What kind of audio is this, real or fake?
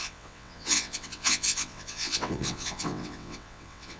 fake